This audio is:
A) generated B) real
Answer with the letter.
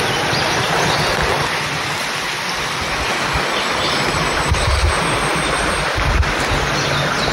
B